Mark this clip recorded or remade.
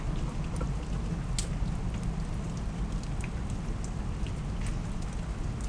recorded